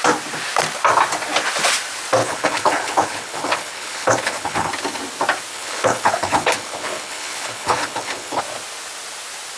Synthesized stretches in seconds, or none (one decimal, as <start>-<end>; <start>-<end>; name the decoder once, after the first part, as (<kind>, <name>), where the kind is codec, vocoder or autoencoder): 2.2-4.7 (codec, HILCodec); 5.5-8.4